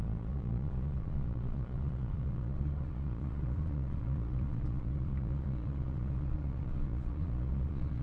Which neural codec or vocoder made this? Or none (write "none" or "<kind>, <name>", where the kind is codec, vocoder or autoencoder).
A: vocoder, Vocos